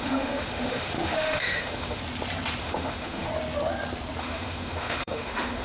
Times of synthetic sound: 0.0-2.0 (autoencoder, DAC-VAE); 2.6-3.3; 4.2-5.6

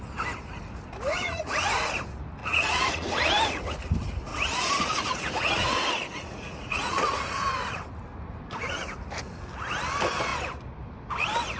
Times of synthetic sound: 1.1-1.7 (vocoder, Vocos); 2.4-3.3; 4.3-7.5

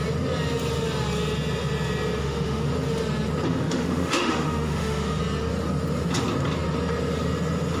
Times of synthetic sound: 2.2-2.7 (autoencoder, DAC-VAE); 3.5-5.2

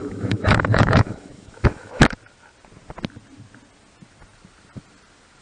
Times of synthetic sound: 0.0-2.0 (autoencoder, DAC-VAE)

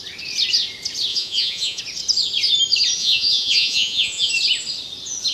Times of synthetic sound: 1.1-1.8 (vocoder, Vocos); 3.0-4.3

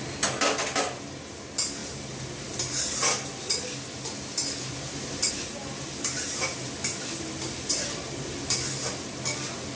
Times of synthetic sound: none